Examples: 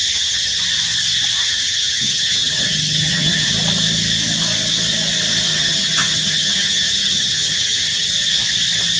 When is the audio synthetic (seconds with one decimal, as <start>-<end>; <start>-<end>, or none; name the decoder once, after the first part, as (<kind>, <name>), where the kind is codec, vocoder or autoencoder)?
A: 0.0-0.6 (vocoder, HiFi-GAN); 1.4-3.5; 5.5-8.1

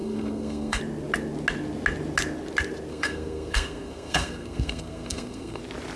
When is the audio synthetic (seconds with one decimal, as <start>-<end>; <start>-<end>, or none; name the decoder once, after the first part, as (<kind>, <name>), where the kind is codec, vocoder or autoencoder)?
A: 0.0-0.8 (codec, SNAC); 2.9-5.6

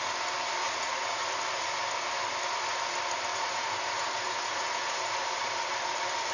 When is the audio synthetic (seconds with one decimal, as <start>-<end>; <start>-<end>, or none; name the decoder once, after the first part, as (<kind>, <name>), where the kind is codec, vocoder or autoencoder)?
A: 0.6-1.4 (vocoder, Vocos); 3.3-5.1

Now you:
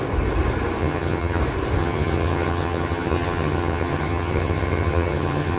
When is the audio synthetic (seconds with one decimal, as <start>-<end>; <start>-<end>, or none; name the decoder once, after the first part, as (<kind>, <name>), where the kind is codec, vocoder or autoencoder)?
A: 0.8-1.4 (vocoder, HiFi-GAN); 1.8-5.6